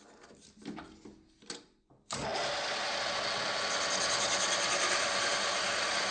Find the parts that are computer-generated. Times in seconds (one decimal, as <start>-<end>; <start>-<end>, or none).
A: none